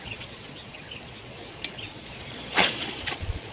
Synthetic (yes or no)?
yes